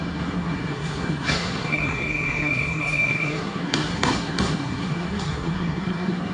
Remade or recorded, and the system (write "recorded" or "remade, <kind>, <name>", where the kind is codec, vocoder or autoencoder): remade, codec, SNAC